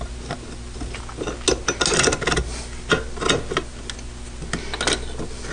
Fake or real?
real